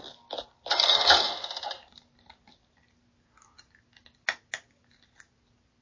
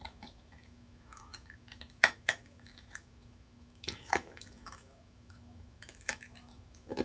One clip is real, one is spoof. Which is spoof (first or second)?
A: second